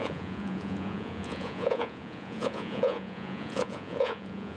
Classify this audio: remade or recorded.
remade